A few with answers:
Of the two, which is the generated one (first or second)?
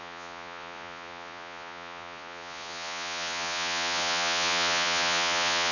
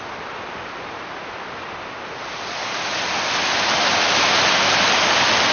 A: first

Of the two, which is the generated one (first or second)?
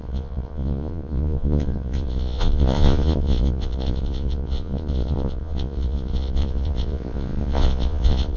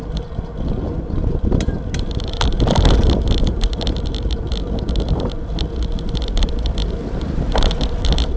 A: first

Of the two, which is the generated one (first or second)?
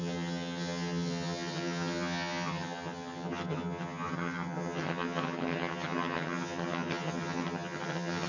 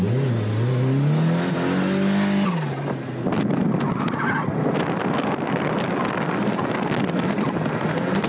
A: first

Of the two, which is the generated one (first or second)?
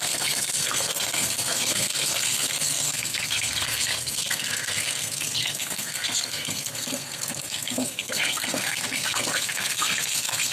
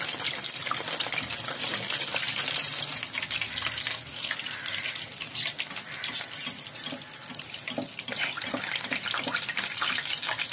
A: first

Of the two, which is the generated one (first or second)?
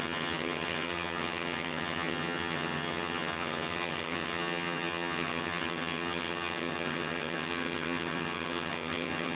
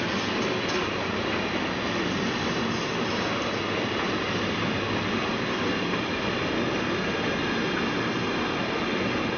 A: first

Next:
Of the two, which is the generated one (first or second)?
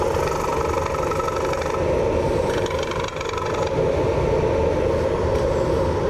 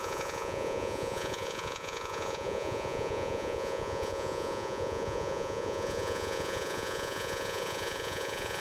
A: second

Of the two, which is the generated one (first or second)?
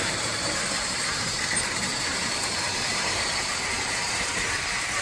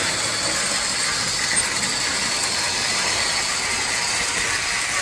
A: first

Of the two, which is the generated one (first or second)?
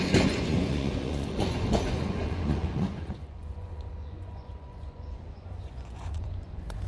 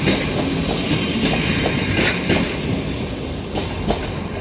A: first